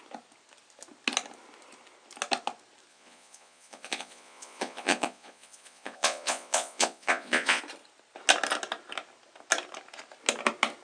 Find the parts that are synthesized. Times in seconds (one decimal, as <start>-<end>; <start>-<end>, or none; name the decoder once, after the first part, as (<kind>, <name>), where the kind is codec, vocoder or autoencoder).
2.9-7.6 (vocoder, Vocos)